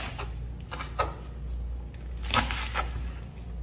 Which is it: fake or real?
real